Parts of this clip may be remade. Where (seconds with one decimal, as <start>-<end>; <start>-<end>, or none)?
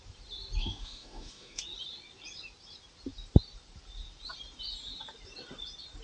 0.6-1.6